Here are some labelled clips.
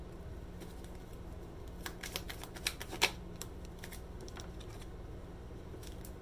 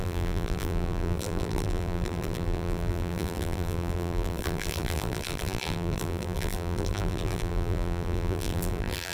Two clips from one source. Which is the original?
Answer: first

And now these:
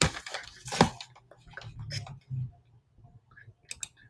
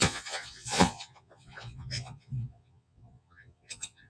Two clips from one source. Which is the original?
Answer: first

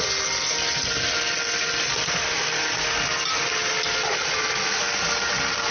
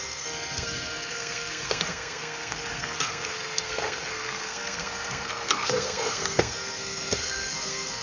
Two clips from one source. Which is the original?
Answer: first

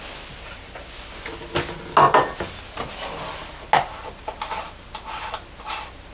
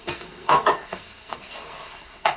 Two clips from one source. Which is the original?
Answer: first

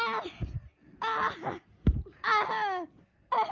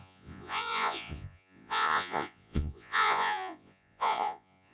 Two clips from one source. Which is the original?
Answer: first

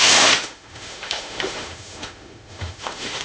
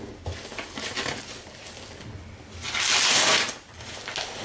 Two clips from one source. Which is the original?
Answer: second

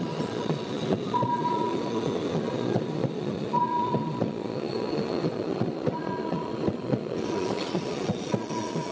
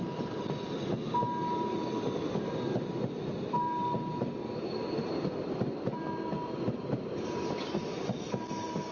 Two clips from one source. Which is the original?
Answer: second